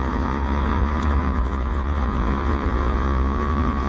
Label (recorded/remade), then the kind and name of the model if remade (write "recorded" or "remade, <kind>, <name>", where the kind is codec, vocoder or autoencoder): remade, vocoder, Vocos